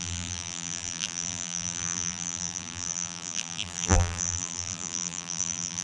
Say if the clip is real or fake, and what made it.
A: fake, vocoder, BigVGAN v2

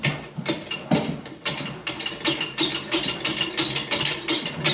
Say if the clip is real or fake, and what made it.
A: real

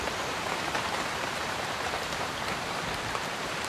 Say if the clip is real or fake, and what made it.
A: fake, vocoder, BigVGAN v2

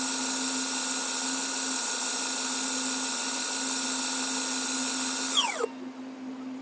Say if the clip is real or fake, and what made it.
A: real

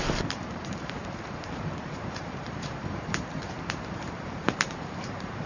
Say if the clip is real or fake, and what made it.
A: fake, vocoder, BigVGAN v2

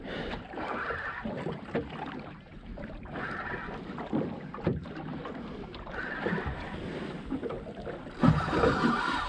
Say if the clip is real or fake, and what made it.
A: real